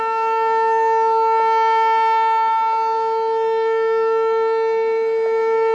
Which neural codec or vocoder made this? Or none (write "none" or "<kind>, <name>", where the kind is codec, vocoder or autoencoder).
none